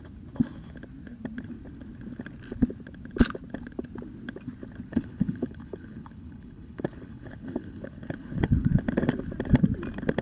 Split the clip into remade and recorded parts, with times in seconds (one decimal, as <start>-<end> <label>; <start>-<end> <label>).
0.0-4.9 recorded; 4.9-8.8 remade; 8.8-10.2 recorded